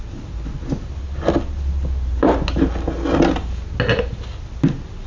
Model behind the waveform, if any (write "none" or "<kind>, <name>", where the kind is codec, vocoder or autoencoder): none